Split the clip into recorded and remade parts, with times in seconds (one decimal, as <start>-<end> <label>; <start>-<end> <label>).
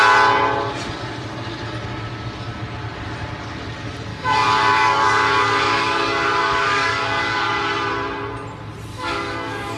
0.0-4.1 recorded; 4.1-7.5 remade; 7.5-8.9 recorded; 8.9-9.8 remade